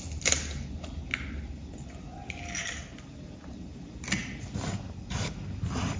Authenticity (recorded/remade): recorded